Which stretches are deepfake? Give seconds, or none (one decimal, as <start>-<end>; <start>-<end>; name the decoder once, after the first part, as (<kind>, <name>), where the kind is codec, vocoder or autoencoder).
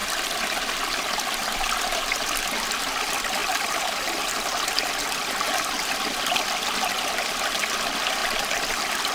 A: 8.2-9.1 (vocoder, BigVGAN v2)